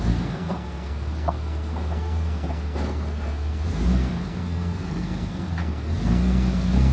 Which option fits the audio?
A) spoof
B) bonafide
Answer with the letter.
A